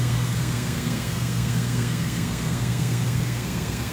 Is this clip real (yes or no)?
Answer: no